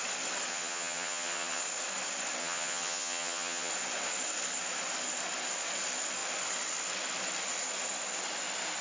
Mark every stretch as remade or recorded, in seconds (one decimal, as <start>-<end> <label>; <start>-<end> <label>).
0.0-0.5 recorded; 0.5-1.6 remade; 1.6-2.4 recorded; 2.4-3.7 remade; 3.7-8.8 recorded